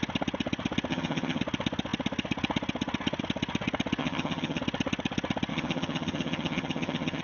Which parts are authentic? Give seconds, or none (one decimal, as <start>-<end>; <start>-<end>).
0.0-0.9; 1.4-4.0; 4.6-5.5